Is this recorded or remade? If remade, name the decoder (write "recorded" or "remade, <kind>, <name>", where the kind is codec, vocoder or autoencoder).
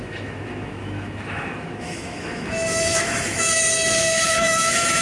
remade, autoencoder, DAC-VAE